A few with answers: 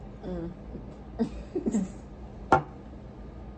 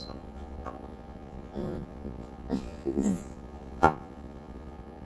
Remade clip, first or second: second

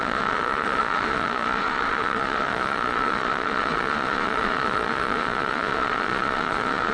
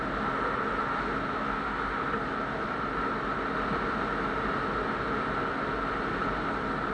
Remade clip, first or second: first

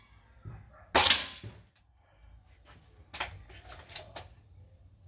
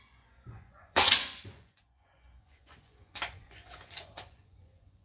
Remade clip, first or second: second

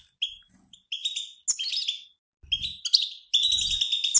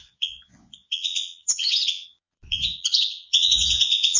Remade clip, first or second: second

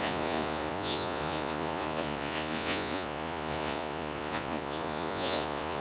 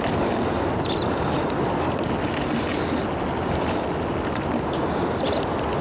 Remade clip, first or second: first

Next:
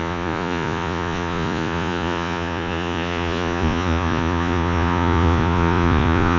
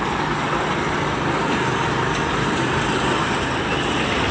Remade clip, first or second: first